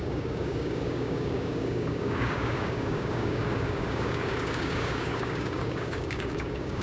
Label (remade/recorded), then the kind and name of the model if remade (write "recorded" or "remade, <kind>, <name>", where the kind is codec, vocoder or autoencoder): remade, codec, DAC